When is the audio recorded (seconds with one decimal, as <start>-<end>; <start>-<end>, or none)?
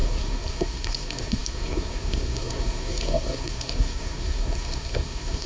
none